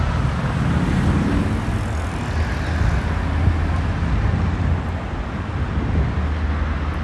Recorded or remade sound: recorded